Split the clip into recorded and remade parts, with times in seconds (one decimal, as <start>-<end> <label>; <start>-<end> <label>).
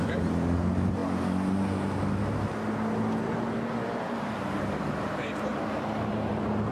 0.0-1.0 remade; 1.0-5.0 recorded; 5.0-6.7 remade